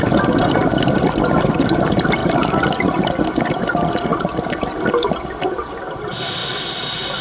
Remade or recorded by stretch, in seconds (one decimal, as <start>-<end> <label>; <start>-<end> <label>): 0.0-7.2 recorded